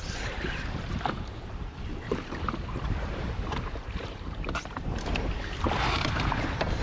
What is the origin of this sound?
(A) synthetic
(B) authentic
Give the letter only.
A